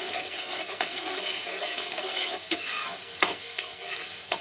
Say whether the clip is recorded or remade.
remade